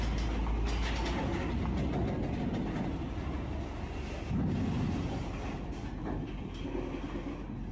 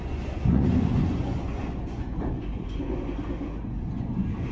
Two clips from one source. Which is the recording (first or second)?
first